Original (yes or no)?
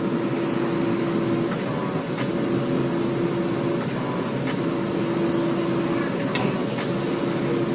yes